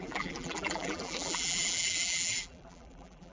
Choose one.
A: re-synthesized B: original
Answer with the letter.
A